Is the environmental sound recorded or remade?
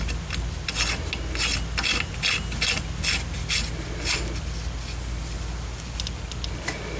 recorded